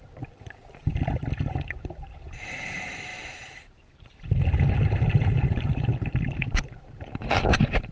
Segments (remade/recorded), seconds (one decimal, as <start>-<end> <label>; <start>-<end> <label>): 0.0-0.9 remade; 0.9-1.5 recorded; 1.5-7.9 remade